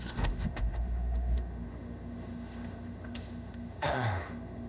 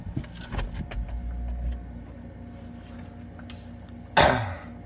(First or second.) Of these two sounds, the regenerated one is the first